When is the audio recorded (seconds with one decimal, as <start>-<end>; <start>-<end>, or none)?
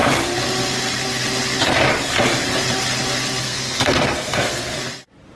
0.0-3.4; 4.8-5.4